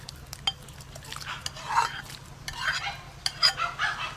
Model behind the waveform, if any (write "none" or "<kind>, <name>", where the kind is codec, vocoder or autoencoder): none